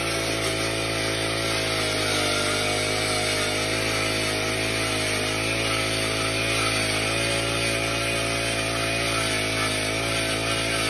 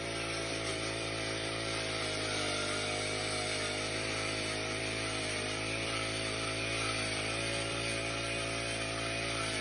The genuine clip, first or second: first